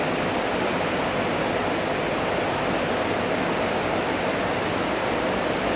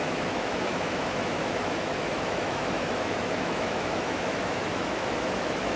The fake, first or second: second